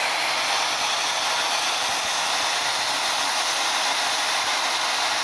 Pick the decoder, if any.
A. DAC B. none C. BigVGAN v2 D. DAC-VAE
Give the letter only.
B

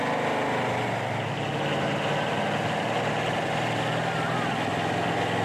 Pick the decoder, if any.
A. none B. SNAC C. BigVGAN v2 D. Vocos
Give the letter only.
A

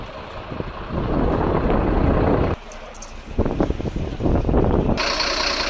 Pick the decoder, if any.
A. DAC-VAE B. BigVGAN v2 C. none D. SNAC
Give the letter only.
C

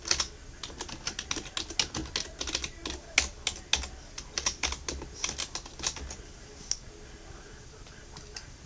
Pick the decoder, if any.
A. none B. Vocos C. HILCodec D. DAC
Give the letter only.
A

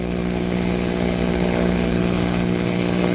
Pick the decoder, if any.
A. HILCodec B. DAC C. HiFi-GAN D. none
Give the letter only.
A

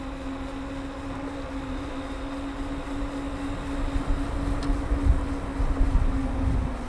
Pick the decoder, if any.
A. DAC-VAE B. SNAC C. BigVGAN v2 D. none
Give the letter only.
D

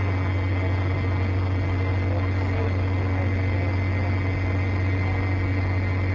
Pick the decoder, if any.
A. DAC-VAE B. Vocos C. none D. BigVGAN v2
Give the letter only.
C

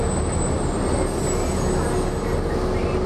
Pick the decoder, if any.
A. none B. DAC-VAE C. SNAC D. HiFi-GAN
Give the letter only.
A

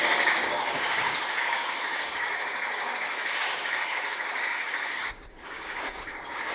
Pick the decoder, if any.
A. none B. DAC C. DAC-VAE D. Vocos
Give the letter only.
B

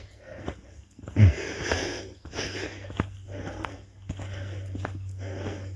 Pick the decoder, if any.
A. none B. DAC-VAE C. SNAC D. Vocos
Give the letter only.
C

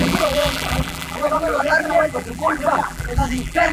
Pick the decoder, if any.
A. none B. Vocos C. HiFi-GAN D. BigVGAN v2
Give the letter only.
D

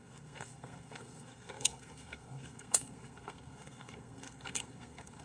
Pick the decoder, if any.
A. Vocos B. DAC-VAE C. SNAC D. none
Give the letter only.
C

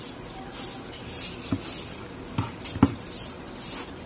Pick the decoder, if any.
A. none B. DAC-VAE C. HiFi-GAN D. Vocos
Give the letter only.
A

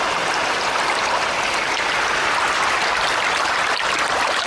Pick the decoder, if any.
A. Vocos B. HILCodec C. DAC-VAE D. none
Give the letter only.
D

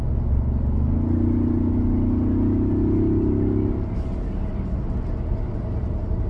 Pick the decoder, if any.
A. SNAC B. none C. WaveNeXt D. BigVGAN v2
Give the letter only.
B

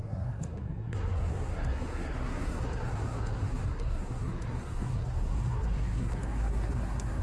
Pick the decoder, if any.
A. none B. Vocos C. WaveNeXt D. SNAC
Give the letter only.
D